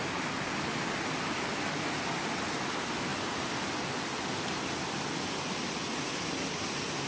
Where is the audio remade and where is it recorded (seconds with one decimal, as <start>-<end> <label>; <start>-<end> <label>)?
0.0-7.1 recorded